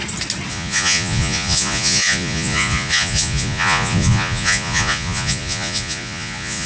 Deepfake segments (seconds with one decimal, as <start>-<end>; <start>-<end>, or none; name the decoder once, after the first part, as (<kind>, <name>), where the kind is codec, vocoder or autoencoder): 0.5-6.7 (vocoder, Vocos)